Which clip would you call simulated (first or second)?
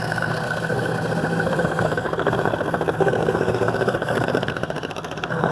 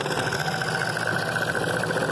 first